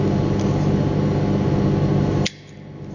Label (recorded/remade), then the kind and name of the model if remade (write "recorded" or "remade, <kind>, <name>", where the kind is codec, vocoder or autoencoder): recorded